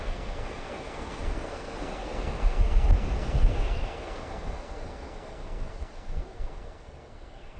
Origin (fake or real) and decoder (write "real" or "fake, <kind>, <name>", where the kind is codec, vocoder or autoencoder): fake, codec, SNAC